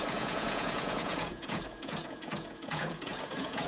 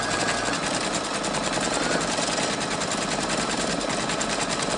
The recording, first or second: second